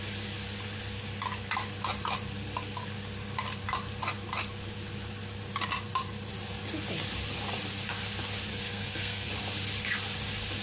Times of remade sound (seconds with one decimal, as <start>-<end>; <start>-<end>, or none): 8.5-9.3